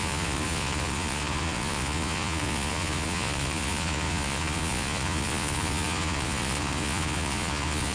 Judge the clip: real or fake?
fake